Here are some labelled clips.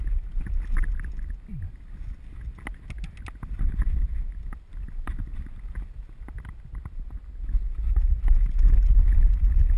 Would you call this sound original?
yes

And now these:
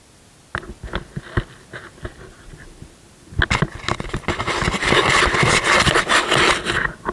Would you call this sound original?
yes